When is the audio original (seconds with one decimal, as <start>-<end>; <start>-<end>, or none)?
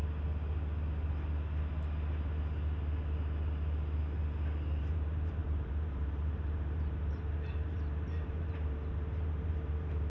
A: 0.0-4.8